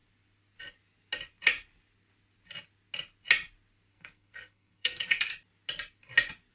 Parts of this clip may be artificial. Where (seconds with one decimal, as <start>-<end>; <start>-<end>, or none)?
3.9-5.3